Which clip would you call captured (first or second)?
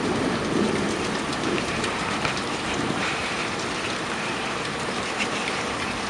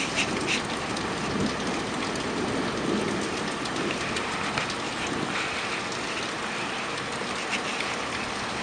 second